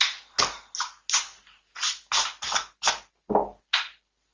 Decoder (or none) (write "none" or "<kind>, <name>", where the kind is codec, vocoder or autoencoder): none